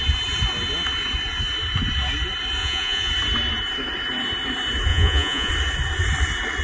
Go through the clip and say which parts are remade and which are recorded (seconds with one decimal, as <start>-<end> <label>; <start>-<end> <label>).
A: 0.0-2.6 recorded; 2.6-3.1 remade; 3.1-4.9 recorded; 4.9-5.5 remade; 5.5-6.6 recorded